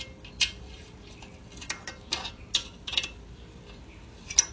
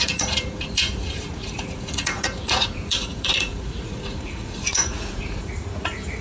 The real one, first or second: first